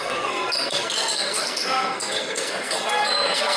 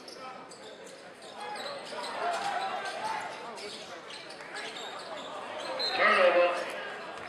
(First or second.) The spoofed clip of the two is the first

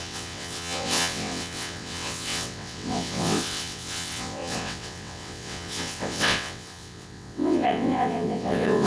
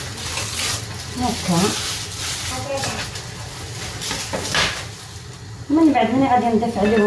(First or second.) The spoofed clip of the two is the first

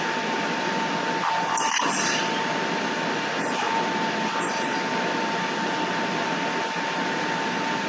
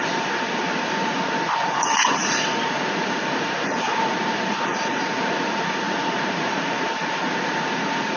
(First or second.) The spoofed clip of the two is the second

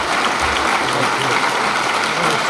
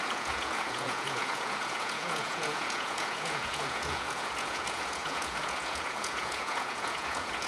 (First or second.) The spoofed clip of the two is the second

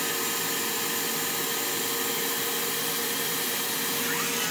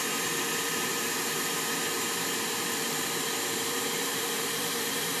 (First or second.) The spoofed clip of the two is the second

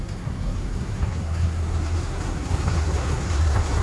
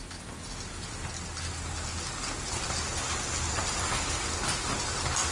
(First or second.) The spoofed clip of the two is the first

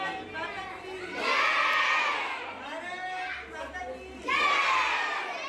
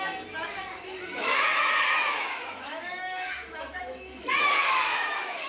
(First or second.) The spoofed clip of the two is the second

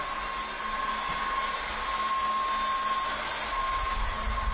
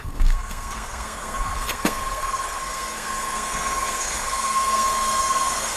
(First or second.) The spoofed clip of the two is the second